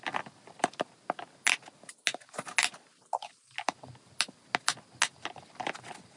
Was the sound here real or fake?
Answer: real